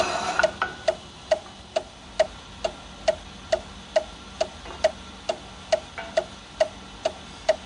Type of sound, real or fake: real